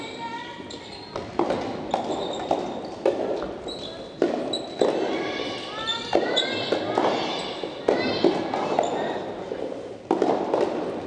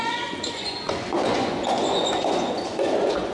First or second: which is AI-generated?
second